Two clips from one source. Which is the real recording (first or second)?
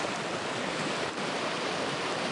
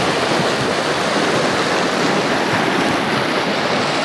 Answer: second